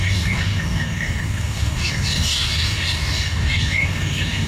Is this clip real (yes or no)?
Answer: no